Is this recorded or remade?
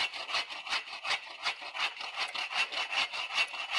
recorded